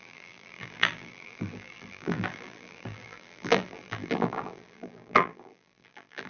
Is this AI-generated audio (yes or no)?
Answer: yes